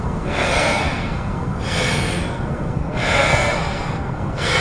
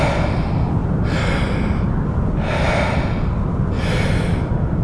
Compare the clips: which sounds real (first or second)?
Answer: second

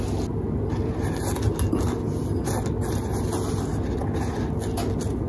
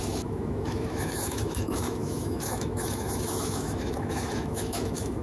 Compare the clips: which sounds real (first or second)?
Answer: first